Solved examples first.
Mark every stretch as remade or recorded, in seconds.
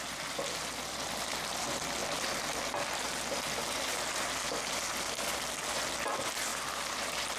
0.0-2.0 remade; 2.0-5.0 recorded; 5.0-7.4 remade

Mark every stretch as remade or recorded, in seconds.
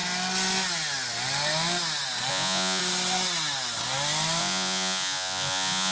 0.0-2.3 recorded; 2.3-2.8 remade; 2.8-4.4 recorded; 4.4-5.9 remade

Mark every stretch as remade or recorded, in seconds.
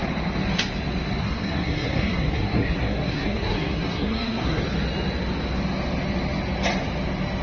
0.0-1.2 recorded; 1.2-4.6 remade; 4.6-7.4 recorded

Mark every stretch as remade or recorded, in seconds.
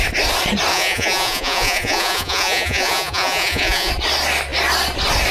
0.0-0.7 recorded; 0.7-3.9 remade; 3.9-5.3 recorded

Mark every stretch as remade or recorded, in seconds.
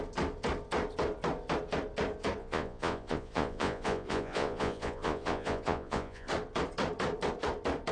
0.0-2.4 recorded; 2.4-6.3 remade; 6.3-7.9 recorded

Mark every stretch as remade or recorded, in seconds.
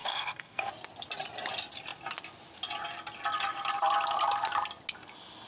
0.0-0.7 remade; 0.7-5.5 recorded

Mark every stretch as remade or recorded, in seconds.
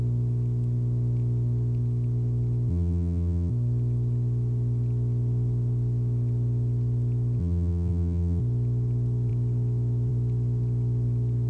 0.0-2.7 recorded; 2.7-3.5 remade; 3.5-7.4 recorded; 7.4-8.4 remade; 8.4-11.5 recorded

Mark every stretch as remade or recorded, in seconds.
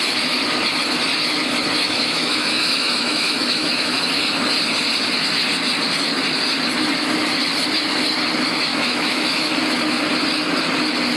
0.0-1.8 recorded; 1.8-4.0 remade; 4.0-8.7 recorded; 8.7-9.5 remade; 9.5-11.2 recorded